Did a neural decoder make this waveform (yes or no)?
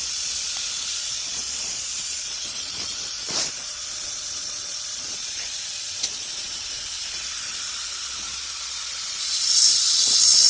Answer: yes